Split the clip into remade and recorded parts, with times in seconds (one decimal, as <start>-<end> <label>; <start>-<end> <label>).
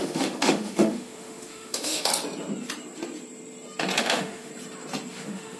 0.0-2.1 remade; 2.1-4.0 recorded; 4.0-4.5 remade; 4.5-5.1 recorded; 5.1-5.6 remade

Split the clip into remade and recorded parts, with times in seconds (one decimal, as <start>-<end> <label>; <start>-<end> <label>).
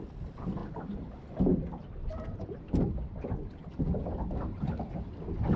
0.0-0.6 recorded; 0.6-1.1 remade; 1.1-5.6 recorded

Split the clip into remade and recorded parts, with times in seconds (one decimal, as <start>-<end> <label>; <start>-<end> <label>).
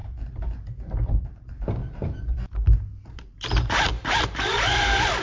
0.0-5.2 remade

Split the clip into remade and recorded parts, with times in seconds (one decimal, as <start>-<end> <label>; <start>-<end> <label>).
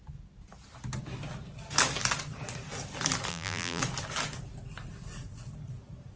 0.0-3.3 recorded; 3.3-3.8 remade; 3.8-6.2 recorded